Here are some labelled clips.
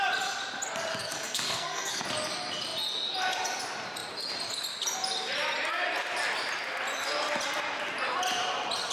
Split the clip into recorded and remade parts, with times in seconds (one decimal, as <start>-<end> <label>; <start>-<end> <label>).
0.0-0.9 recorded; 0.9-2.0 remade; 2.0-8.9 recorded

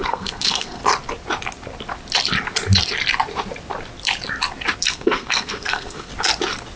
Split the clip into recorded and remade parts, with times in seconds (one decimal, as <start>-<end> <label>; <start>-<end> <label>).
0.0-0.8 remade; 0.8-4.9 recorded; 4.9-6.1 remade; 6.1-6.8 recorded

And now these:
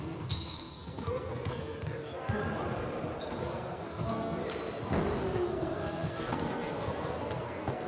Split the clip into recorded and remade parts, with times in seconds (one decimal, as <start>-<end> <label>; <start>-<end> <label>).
0.0-2.4 remade; 2.4-3.4 recorded; 3.4-4.4 remade; 4.4-5.2 recorded; 5.2-7.9 remade